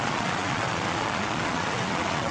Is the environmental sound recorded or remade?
remade